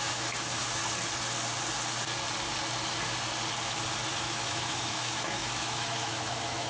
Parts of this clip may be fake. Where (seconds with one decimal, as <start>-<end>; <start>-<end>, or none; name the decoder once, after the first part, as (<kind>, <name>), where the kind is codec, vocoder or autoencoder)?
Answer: 0.0-0.8 (autoencoder, DAC-VAE); 4.1-6.7